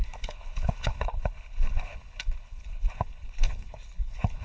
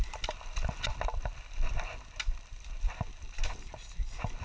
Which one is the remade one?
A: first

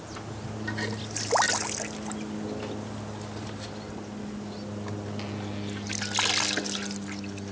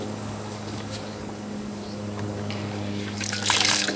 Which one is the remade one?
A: second